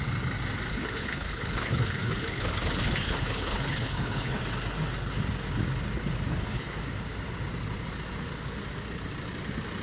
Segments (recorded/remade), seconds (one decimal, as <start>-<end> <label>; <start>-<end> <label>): 0.0-0.7 recorded; 0.7-4.4 remade; 4.4-6.3 recorded; 6.3-6.8 remade; 6.8-9.8 recorded